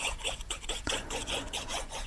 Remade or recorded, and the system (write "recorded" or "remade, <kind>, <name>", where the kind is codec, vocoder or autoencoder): remade, vocoder, Vocos